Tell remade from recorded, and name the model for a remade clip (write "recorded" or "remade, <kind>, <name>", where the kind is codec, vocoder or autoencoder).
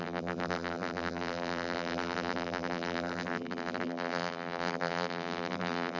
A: remade, vocoder, BigVGAN v2